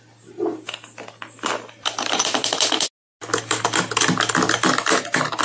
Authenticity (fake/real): real